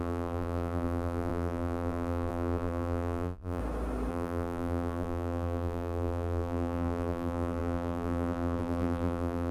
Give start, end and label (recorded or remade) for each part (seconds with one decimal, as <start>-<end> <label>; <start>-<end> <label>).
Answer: 0.0-3.6 remade; 3.6-4.1 recorded; 4.1-9.5 remade